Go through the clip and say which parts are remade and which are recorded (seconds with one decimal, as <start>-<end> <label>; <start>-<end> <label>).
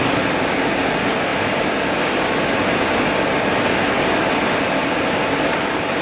0.0-6.0 recorded